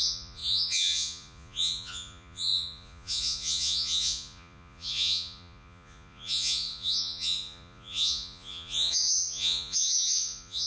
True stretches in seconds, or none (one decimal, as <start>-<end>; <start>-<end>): none